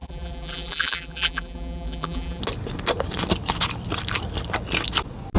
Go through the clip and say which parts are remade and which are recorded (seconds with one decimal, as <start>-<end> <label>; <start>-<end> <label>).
0.0-2.4 remade; 2.4-5.4 recorded